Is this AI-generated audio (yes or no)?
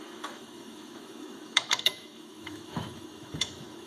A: yes